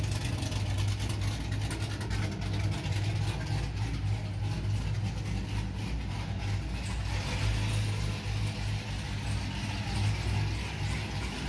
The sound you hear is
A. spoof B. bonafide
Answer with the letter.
B